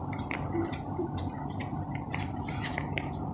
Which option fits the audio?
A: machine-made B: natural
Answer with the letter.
A